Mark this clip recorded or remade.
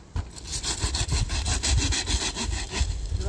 recorded